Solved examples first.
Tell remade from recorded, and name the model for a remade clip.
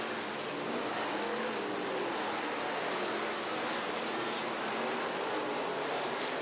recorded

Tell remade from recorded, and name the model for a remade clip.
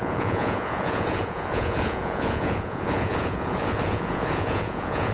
remade, vocoder, Vocos